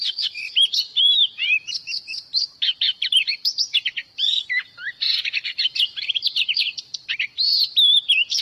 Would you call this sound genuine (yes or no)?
no